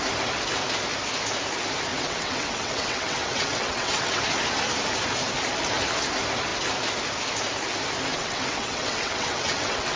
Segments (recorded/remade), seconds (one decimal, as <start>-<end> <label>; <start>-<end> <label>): 0.0-1.9 recorded; 1.9-4.2 remade; 4.2-8.1 recorded; 8.1-10.0 remade